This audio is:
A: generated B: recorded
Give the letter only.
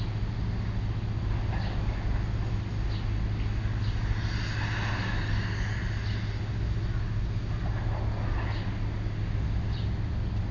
B